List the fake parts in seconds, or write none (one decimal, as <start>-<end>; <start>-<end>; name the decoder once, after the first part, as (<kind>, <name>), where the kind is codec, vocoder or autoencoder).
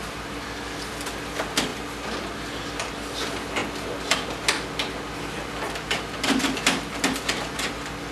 none